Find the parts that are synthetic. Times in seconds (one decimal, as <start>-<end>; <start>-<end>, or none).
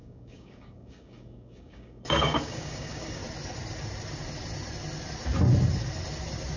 0.0-3.2